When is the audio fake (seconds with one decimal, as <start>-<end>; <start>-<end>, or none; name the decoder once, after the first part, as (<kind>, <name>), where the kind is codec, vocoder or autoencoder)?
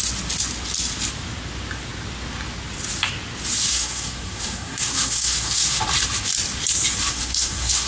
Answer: 3.7-5.8 (codec, SNAC); 7.1-7.9